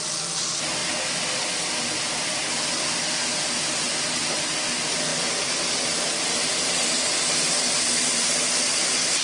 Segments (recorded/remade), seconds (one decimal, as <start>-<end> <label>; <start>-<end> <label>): 0.0-9.2 recorded